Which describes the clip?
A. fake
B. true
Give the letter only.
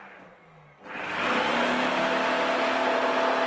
B